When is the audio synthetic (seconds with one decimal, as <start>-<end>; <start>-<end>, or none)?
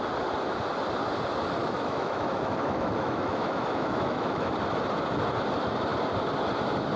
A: 1.6-4.5